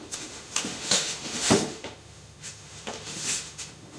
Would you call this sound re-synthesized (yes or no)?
yes